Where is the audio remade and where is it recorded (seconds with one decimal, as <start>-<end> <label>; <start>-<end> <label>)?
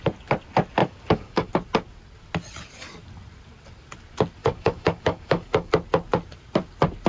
0.0-0.8 recorded; 0.8-1.5 remade; 1.5-4.4 recorded; 4.4-5.7 remade; 5.7-7.1 recorded